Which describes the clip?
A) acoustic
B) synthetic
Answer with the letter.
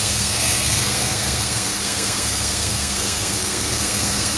B